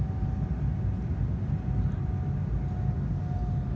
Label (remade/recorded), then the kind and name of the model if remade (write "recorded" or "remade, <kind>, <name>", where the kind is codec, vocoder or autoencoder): recorded